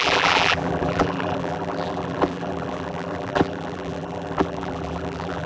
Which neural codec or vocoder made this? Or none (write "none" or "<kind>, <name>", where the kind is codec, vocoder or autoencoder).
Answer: vocoder, BigVGAN v2